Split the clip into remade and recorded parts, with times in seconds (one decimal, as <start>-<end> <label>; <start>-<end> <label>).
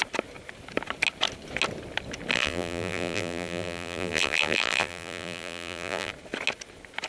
0.0-2.3 recorded; 2.3-6.1 remade; 6.1-7.1 recorded